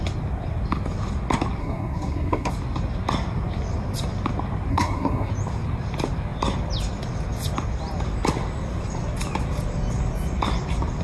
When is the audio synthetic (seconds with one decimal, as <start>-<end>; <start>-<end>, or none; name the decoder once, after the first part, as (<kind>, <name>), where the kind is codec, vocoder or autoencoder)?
1.6-2.5 (codec, SNAC); 4.7-5.3